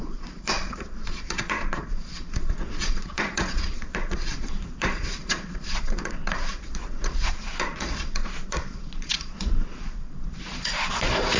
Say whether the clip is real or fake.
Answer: fake